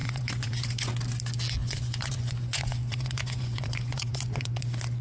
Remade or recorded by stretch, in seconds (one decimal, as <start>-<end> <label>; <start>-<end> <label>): 0.0-0.9 remade; 0.9-1.6 recorded; 1.6-4.6 remade; 4.6-5.0 recorded